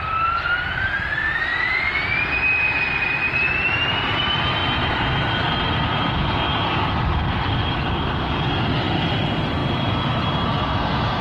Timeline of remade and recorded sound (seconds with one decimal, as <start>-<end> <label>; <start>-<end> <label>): 0.0-1.5 remade; 1.5-2.2 recorded; 2.2-9.6 remade; 9.6-11.2 recorded

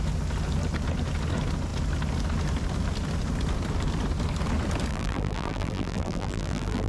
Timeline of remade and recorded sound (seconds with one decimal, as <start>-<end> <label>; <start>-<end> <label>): 0.0-4.9 recorded; 4.9-6.9 remade

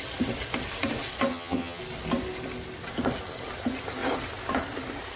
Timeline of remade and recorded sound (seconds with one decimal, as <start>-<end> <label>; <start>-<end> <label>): 0.0-1.3 recorded; 1.3-1.8 remade; 1.8-5.2 recorded

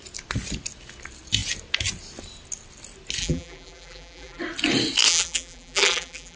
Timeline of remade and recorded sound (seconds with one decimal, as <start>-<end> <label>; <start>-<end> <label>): 0.0-3.2 recorded; 3.2-4.4 remade; 4.4-5.1 recorded; 5.1-6.4 remade

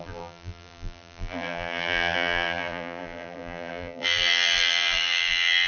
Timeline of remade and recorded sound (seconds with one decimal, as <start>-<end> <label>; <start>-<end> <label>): 0.0-5.7 remade

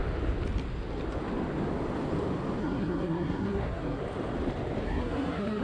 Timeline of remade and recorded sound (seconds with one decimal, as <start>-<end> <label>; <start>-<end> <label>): 0.0-2.6 recorded; 2.6-4.0 remade; 4.0-4.8 recorded; 4.8-5.6 remade

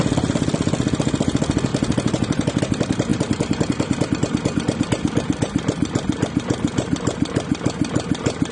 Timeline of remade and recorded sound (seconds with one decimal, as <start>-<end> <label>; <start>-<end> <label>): 0.0-1.7 recorded; 1.7-2.6 remade; 2.6-3.1 recorded; 3.1-3.7 remade; 3.7-8.5 recorded